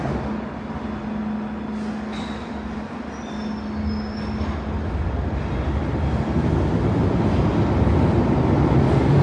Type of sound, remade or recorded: recorded